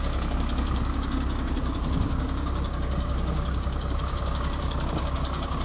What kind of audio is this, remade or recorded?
remade